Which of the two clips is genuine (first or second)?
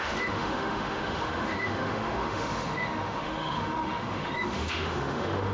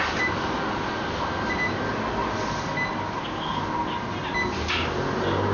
second